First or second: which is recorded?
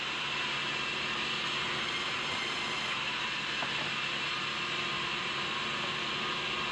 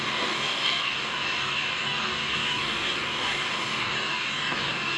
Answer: first